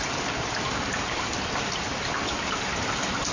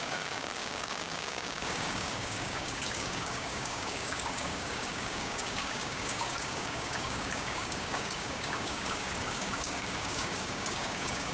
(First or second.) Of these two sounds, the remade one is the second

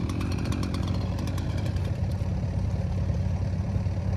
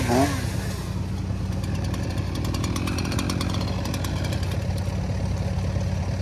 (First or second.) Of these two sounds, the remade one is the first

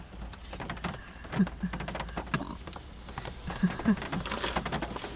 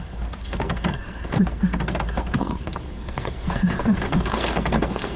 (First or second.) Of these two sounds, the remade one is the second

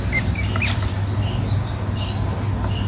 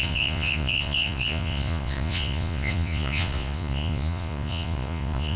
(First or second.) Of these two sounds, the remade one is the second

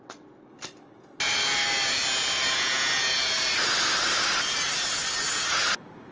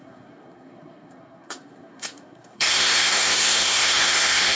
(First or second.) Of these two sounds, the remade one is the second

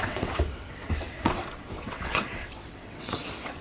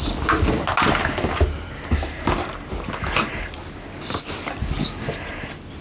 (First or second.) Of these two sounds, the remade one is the first